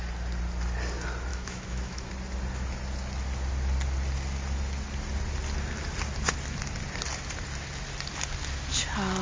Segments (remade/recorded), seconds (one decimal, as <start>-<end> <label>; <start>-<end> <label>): 0.0-1.3 recorded; 1.3-2.1 remade; 2.1-9.2 recorded